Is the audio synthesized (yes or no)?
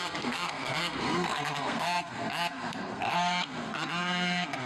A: yes